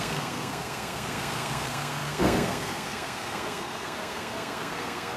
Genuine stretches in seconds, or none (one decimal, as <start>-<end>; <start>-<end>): none